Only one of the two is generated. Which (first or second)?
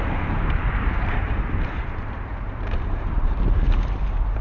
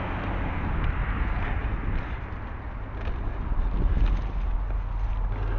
first